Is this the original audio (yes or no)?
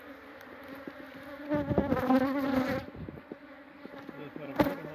yes